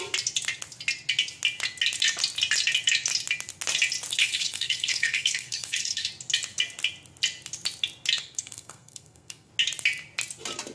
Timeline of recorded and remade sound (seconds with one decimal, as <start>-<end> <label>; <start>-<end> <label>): 0.0-4.2 recorded; 4.2-6.1 remade; 6.1-8.2 recorded; 8.2-9.5 remade; 9.5-10.7 recorded